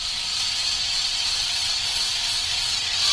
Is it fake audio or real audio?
fake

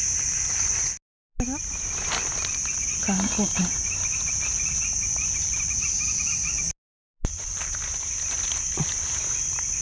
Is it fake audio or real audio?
real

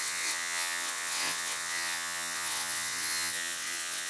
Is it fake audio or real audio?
fake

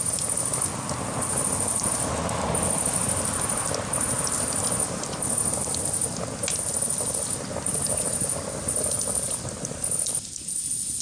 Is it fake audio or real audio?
real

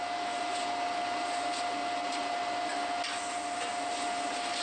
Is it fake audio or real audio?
real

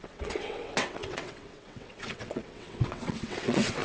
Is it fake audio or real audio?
fake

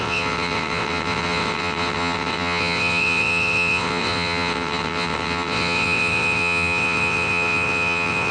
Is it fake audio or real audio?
fake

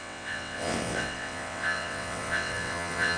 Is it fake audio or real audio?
fake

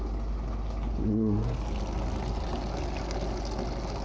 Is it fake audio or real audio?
real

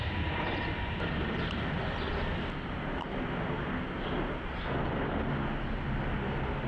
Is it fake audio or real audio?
real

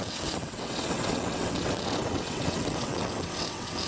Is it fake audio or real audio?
fake